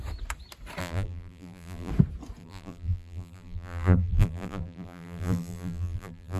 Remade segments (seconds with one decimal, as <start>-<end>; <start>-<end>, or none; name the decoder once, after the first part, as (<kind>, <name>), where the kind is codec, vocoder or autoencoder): 0.8-1.9 (vocoder, BigVGAN v2); 2.4-6.4